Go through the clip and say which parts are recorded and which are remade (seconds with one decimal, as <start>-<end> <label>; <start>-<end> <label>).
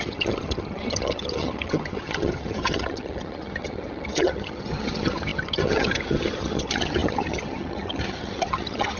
0.0-9.0 remade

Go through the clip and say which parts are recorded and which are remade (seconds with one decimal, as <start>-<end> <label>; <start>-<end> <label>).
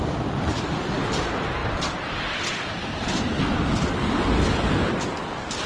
0.0-5.7 recorded